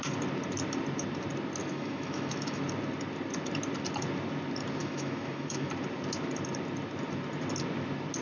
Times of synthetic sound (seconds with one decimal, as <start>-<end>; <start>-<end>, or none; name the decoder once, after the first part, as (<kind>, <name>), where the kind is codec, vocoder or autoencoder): 1.6-2.6 (autoencoder, DAC-VAE); 4.8-5.7